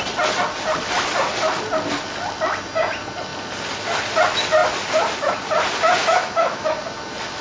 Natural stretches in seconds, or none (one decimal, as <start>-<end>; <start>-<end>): 0.0-6.0; 6.7-7.4